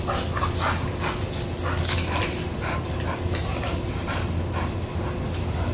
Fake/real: real